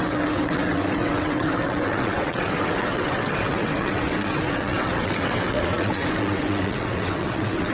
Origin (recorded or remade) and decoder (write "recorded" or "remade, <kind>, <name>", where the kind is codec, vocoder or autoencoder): remade, vocoder, WaveNeXt